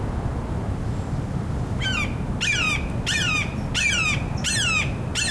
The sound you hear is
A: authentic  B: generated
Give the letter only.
A